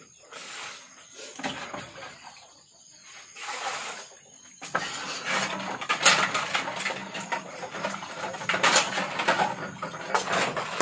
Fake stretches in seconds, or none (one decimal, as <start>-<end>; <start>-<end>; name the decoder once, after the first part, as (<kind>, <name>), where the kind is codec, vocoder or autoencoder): 7.0-9.0 (vocoder, BigVGAN v2)